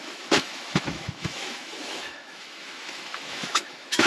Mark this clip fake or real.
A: fake